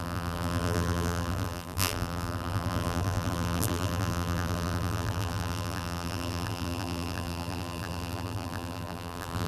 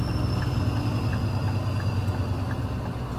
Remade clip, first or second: first